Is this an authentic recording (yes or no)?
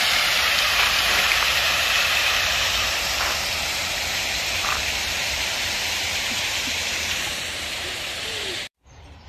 no